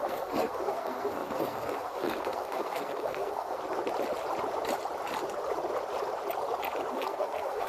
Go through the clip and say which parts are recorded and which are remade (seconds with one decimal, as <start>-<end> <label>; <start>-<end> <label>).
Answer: 0.0-3.6 remade; 3.6-6.9 recorded; 6.9-7.7 remade